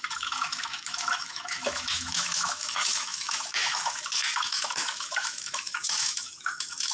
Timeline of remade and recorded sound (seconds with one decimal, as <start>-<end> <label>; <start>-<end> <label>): 0.0-6.9 remade